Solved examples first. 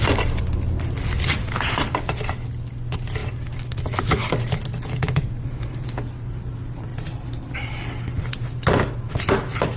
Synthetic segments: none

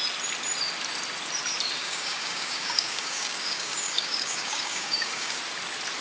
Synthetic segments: 1.8-5.4 (codec, DAC)

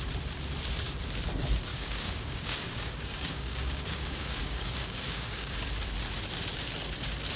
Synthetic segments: 1.7-5.5 (codec, DAC)

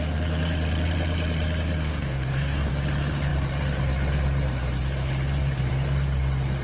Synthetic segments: 1.9-2.7 (codec, DAC)

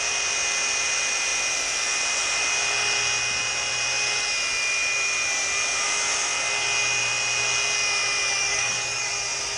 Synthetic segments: 8.4-9.1 (codec, DAC)

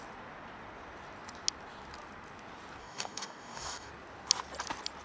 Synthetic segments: 2.8-3.9 (codec, DAC)